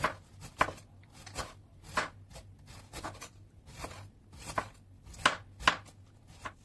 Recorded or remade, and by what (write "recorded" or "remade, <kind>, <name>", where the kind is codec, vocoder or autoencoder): recorded